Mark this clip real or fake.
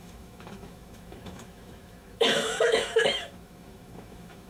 fake